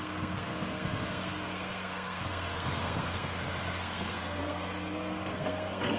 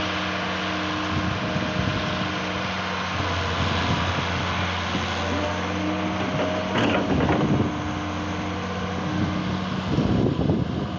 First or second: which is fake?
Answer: first